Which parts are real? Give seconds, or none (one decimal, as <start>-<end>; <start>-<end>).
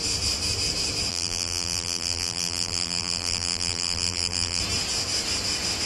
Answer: 0.0-1.1; 4.6-5.9